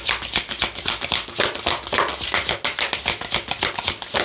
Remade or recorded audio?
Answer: recorded